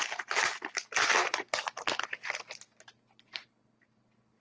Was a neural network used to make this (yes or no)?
no